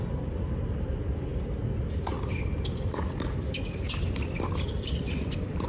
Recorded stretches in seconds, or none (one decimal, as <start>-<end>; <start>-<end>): 1.3-4.7